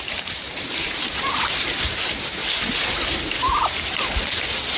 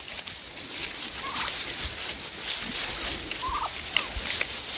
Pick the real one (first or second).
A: second